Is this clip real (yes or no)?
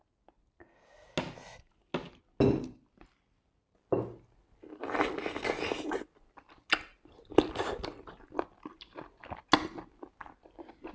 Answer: yes